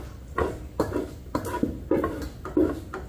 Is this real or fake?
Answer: real